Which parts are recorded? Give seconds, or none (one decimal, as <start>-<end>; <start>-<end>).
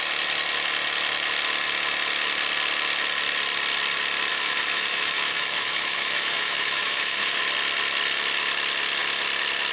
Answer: 0.0-4.3; 7.4-9.7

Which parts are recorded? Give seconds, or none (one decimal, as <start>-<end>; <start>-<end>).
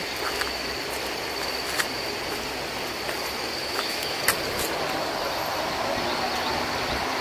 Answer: 0.0-3.6; 4.2-7.2